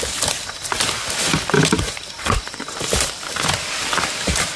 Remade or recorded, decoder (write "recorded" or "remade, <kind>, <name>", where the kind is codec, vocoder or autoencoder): recorded